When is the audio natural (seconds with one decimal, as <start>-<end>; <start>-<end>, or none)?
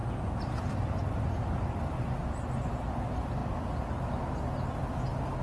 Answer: 0.0-5.4